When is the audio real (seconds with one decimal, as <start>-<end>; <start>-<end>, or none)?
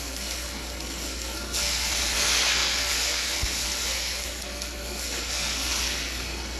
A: none